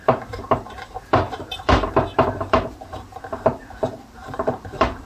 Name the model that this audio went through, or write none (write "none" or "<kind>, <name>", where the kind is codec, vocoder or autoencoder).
vocoder, BigVGAN v2